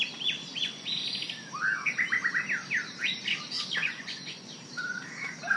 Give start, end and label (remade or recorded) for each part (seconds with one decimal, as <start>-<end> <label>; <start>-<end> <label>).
0.0-0.5 recorded; 0.5-1.0 remade; 1.0-3.8 recorded; 3.8-4.5 remade; 4.5-5.6 recorded